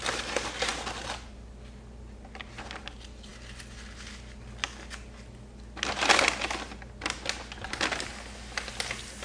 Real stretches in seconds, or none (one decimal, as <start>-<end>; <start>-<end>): 0.0-9.2

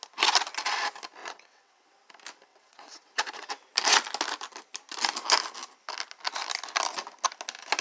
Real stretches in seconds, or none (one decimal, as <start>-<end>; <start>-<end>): 0.0-1.2; 1.9-2.5; 3.5-7.8

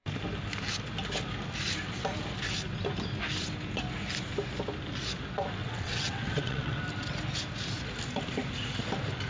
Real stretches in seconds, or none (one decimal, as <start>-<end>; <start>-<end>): 0.0-5.6; 6.8-9.3

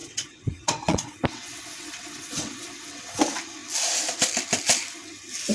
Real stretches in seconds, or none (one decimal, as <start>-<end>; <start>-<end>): 3.2-5.5

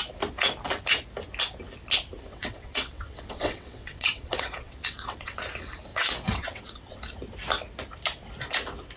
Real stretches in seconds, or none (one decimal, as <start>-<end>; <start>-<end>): 0.0-2.3; 5.4-5.9; 7.0-9.0

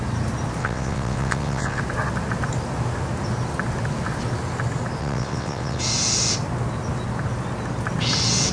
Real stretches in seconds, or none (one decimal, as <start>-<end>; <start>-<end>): 0.0-0.6; 1.8-5.0; 5.8-8.5